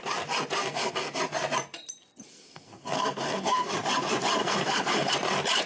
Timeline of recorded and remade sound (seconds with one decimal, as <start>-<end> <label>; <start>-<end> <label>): 0.0-0.6 recorded; 0.6-1.2 remade; 1.2-2.3 recorded; 2.3-3.7 remade; 3.7-4.4 recorded; 4.4-5.1 remade; 5.1-5.7 recorded